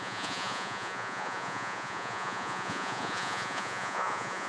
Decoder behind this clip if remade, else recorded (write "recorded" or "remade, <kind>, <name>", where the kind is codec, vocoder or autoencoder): remade, vocoder, Vocos